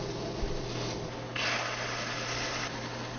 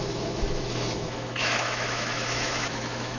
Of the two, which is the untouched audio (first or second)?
first